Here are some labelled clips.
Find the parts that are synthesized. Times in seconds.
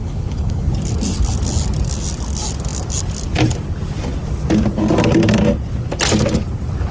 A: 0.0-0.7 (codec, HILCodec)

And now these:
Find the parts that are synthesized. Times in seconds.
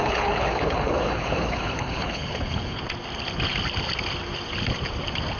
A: 0.0-2.8 (codec, HILCodec)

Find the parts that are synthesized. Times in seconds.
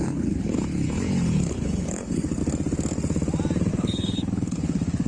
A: 0.0-2.4 (codec, HILCodec); 3.7-5.1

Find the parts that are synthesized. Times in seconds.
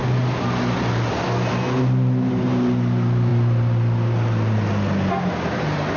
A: none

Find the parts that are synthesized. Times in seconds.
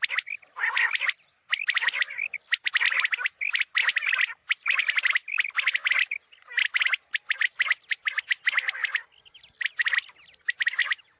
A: none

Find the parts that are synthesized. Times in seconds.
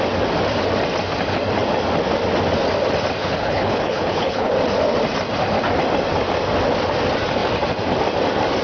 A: 3.2-4.5 (codec, HILCodec)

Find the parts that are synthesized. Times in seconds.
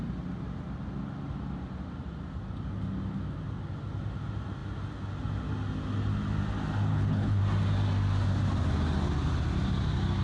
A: 6.9-7.4 (codec, HILCodec)